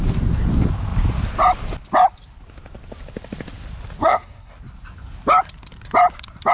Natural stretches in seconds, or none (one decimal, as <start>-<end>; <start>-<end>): 0.0-4.0; 4.5-6.5